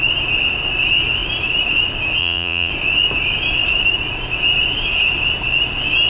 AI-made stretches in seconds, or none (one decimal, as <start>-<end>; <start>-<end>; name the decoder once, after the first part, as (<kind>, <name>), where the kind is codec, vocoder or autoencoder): 2.2-2.7 (vocoder, Vocos)